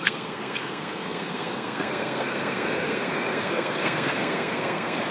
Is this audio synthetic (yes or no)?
yes